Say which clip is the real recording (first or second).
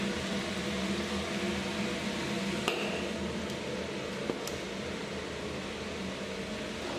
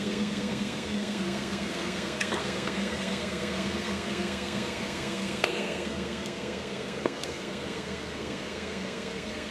first